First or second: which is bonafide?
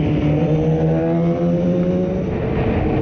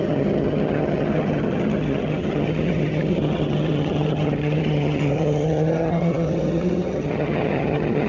first